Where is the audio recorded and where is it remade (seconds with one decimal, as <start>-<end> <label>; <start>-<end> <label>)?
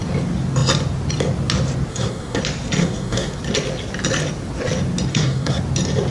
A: 0.0-1.9 recorded; 1.9-2.4 remade; 2.4-2.8 recorded; 2.8-3.4 remade; 3.4-5.1 recorded; 5.1-5.6 remade; 5.6-6.1 recorded